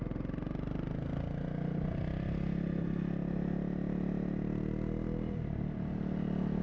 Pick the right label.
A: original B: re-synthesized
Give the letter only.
A